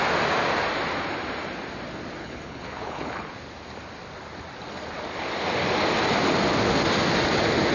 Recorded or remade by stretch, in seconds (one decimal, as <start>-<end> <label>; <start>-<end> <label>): 0.0-2.2 recorded; 2.2-3.3 remade; 3.3-7.7 recorded